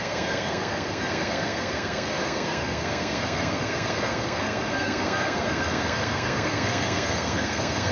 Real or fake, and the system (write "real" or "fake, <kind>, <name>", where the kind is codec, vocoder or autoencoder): fake, codec, SNAC